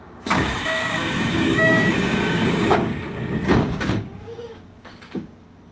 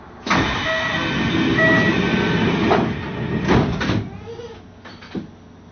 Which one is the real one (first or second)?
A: second